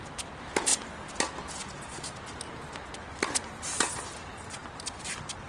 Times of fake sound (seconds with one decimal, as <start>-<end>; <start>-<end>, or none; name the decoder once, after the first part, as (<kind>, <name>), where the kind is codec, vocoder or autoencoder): none